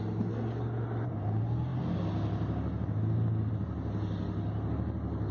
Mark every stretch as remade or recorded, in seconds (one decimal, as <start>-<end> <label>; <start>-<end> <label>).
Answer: 0.0-5.3 recorded